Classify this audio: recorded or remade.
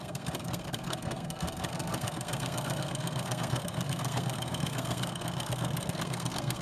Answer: remade